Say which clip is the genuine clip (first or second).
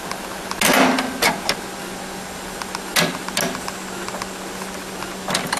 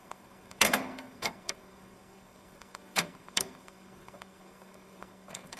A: first